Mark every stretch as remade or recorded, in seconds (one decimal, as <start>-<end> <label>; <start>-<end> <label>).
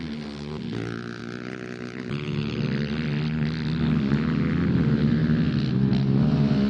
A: 0.0-6.7 recorded